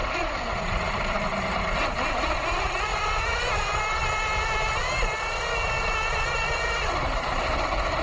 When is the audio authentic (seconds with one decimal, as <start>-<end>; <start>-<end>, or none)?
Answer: 1.2-8.0